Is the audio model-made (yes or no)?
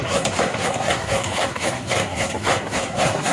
yes